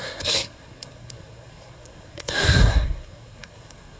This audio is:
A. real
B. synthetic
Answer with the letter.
B